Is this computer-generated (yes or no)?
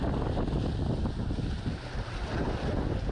no